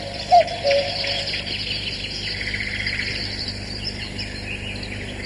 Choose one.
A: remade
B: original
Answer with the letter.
B